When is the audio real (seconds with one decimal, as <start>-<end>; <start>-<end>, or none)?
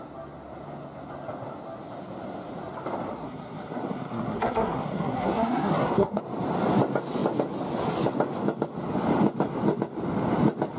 0.0-3.1; 6.2-10.8